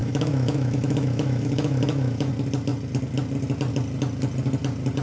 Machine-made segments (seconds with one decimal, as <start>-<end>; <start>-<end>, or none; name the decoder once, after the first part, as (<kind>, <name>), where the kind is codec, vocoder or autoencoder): 0.0-2.3 (autoencoder, DAC-VAE)